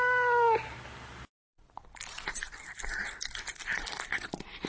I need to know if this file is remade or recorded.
recorded